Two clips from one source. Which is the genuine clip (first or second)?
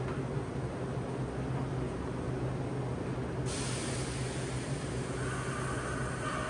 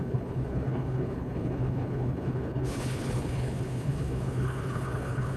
first